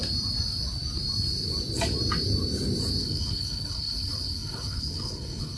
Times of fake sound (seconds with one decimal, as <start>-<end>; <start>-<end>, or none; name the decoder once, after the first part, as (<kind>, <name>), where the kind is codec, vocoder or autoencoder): 3.0-5.6 (codec, HILCodec)